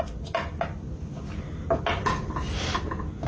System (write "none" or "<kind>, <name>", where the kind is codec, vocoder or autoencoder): none